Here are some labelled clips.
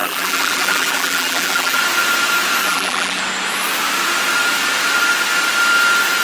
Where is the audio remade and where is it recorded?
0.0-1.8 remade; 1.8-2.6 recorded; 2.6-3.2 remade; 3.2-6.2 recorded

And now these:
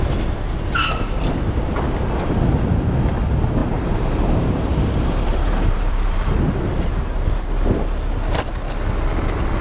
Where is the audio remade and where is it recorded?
0.0-3.6 recorded; 3.6-6.2 remade; 6.2-9.6 recorded

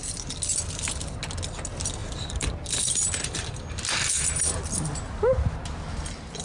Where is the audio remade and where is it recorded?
0.0-2.0 recorded; 2.0-5.0 remade; 5.0-6.4 recorded

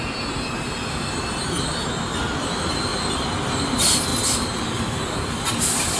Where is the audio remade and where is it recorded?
0.0-2.9 remade; 2.9-3.6 recorded; 3.6-6.0 remade

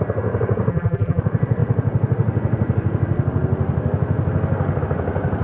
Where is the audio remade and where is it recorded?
0.0-0.7 recorded; 0.7-1.2 remade; 1.2-5.4 recorded

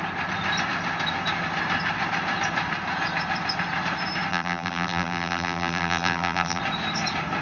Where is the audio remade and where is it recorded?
0.0-4.3 recorded; 4.3-6.6 remade; 6.6-7.4 recorded

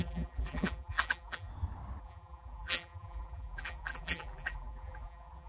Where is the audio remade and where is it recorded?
0.0-1.5 remade; 1.5-2.0 recorded; 2.0-5.5 remade

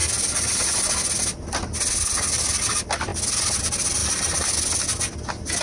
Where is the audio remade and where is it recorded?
0.0-5.6 recorded